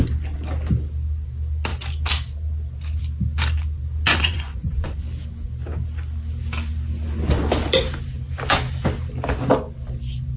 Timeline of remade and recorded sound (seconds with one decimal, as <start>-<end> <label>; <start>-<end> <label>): 0.0-4.1 recorded; 4.1-5.0 remade; 5.0-10.4 recorded